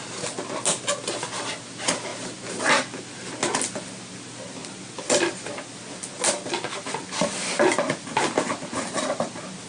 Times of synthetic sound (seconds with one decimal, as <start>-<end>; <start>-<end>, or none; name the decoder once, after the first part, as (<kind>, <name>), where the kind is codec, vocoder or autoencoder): none